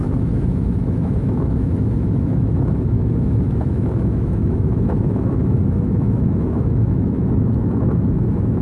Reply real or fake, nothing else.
fake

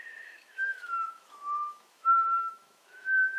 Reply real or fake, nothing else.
fake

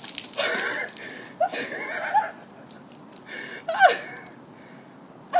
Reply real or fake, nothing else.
real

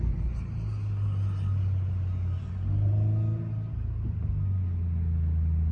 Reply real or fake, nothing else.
real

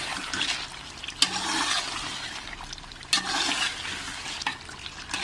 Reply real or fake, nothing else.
real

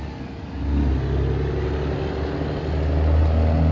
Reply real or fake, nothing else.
real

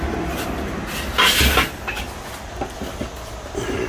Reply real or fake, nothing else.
real